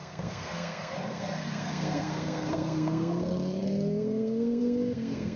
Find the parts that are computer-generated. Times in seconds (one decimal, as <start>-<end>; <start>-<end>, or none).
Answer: 0.0-5.4